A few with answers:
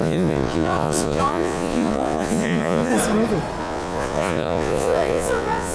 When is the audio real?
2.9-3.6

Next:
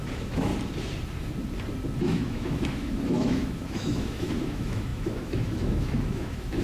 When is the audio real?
0.5-2.0

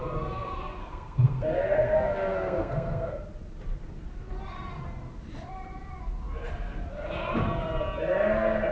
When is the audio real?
0.0-0.8; 3.2-8.7

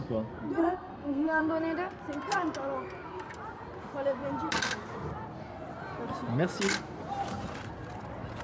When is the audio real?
0.0-0.6; 1.4-8.4

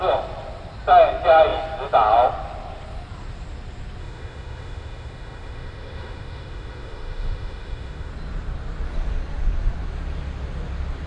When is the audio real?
0.0-4.0; 8.1-11.1

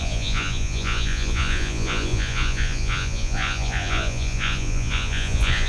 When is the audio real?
none